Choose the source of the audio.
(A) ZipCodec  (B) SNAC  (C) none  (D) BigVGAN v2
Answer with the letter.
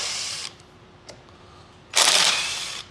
D